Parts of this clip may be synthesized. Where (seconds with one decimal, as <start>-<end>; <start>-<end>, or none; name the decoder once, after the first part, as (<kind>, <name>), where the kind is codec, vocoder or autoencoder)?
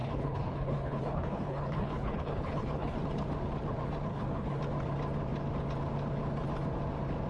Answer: 0.0-3.0 (codec, HILCodec); 4.1-4.6